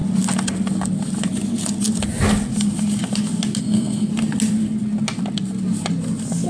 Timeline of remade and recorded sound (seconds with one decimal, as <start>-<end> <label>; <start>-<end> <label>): 0.0-3.6 recorded; 3.6-4.1 remade; 4.1-6.5 recorded